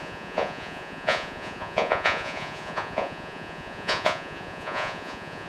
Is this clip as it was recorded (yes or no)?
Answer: no